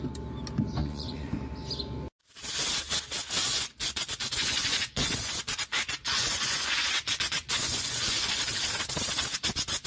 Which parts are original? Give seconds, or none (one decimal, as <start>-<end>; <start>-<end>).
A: 0.0-0.8; 1.3-3.4; 8.4-9.9